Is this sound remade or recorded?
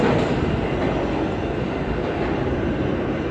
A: recorded